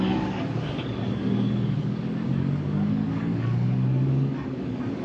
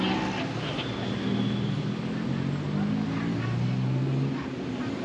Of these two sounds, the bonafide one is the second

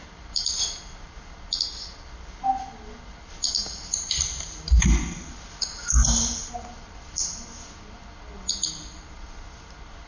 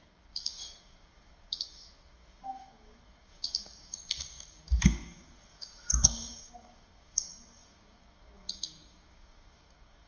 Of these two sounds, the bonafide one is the first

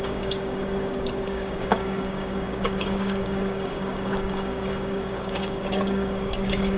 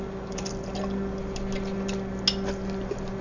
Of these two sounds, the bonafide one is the second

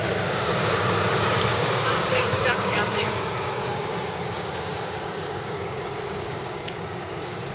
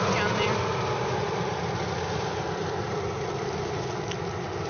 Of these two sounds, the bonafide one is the second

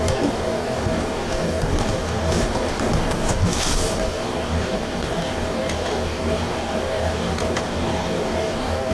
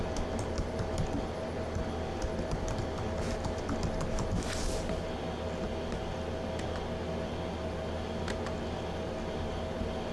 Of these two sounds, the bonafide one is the second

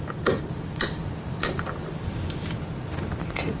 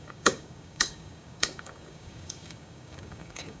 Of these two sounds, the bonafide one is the first